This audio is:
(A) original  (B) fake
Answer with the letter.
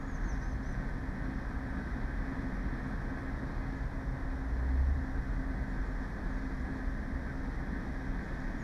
A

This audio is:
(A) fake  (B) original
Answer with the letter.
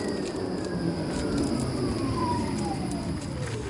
A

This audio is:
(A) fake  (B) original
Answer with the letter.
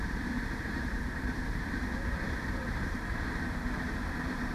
A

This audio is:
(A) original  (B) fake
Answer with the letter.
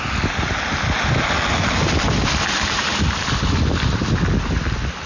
A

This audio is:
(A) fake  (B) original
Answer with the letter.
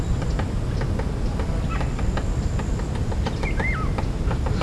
B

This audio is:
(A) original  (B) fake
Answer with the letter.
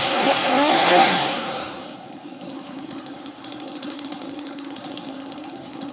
B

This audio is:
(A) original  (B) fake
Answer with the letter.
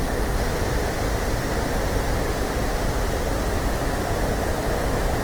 A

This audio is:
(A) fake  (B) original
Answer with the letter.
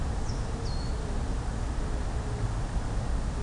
B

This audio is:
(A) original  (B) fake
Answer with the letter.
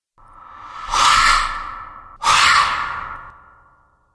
A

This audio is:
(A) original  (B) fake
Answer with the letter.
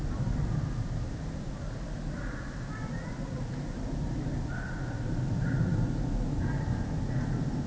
A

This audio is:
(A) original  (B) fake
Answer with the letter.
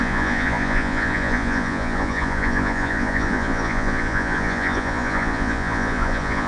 B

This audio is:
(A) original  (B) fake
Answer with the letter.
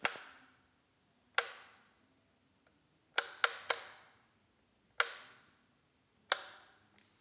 A